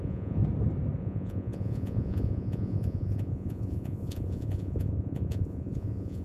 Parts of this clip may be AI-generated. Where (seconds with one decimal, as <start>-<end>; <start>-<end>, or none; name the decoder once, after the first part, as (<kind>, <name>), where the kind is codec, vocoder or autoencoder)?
0.0-0.4 (vocoder, Vocos); 1.0-6.2